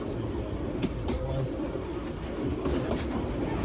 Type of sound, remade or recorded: recorded